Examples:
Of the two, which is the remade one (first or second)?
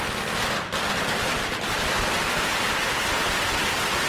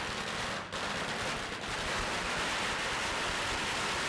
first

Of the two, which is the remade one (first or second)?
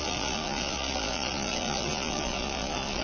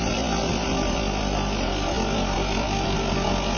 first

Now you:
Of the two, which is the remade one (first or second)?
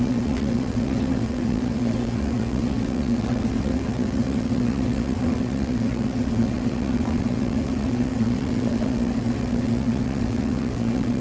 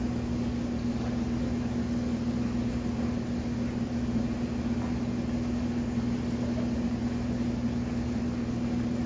first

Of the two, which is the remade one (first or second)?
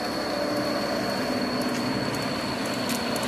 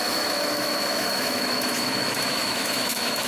second